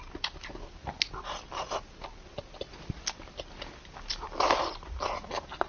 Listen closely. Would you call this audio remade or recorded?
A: recorded